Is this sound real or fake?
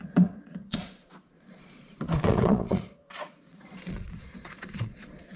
fake